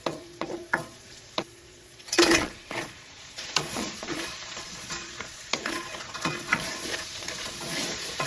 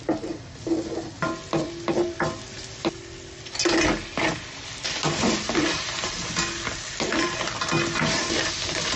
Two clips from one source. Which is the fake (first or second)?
first